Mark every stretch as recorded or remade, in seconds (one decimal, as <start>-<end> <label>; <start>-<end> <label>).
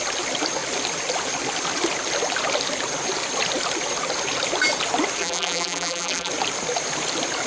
0.0-5.2 recorded; 5.2-6.3 remade; 6.3-7.5 recorded